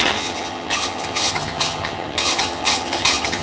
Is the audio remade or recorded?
remade